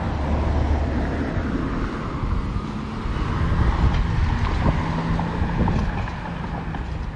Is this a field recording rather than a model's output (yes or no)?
yes